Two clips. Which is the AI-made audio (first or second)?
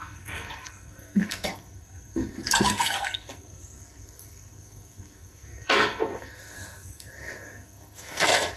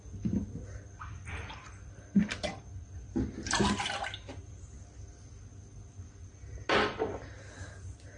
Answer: first